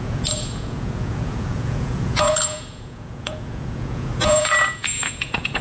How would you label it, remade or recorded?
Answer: remade